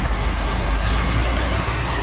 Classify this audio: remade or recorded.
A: remade